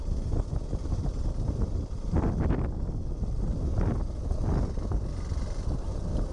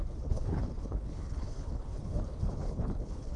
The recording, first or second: first